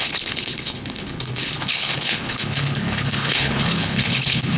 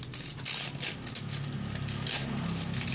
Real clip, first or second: second